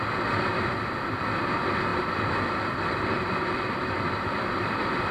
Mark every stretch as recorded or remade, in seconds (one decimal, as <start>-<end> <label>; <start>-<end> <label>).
0.0-0.5 recorded; 0.5-1.4 remade; 1.4-1.9 recorded; 1.9-5.1 remade